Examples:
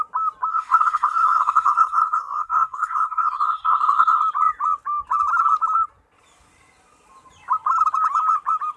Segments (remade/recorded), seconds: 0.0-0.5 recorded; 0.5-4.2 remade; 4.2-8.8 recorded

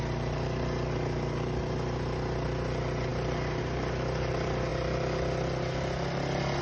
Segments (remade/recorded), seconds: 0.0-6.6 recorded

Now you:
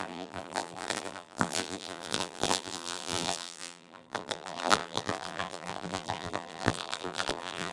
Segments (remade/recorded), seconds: 0.0-7.7 remade

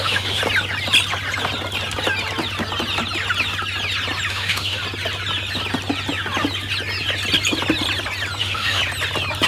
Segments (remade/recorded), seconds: 0.0-0.4 remade; 0.4-4.3 recorded; 4.3-4.8 remade; 4.8-8.4 recorded; 8.4-8.8 remade; 8.8-9.5 recorded